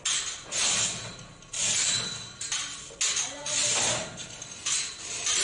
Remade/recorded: recorded